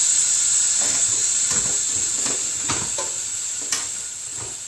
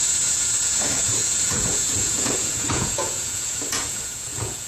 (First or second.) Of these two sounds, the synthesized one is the second